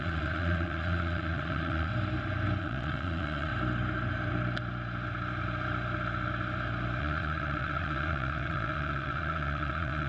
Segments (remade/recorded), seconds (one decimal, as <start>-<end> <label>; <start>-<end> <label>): 0.0-1.9 remade; 1.9-2.6 recorded; 2.6-3.5 remade; 3.5-7.0 recorded; 7.0-10.1 remade